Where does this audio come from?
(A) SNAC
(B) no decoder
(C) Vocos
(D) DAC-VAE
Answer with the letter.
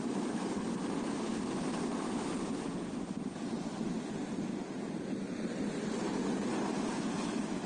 B